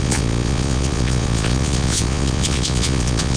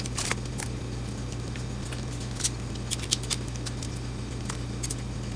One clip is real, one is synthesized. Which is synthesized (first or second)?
first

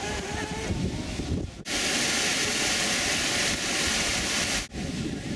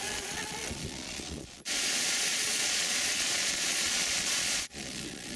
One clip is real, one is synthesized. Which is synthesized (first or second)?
second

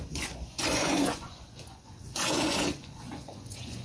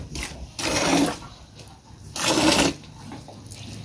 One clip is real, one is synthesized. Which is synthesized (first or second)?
first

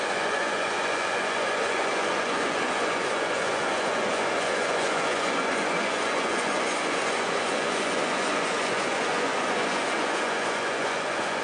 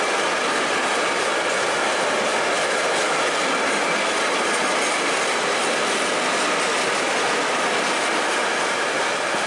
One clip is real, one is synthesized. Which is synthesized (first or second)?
first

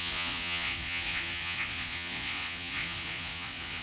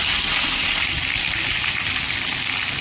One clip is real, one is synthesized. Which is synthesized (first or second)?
first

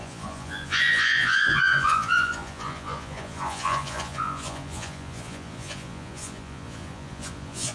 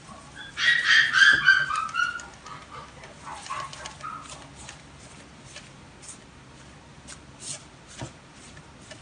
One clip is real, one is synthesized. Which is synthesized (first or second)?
first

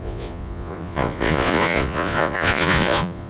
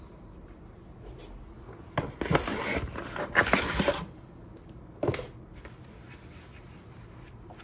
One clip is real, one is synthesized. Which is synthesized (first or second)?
first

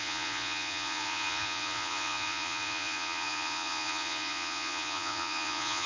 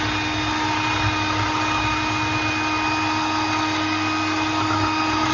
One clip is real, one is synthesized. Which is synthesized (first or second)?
first